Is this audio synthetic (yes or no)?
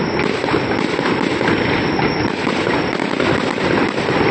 no